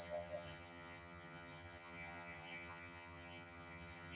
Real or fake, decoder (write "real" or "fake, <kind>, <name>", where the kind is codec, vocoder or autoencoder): fake, vocoder, HiFi-GAN